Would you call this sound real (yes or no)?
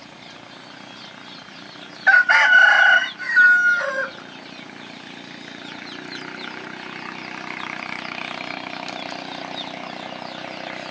yes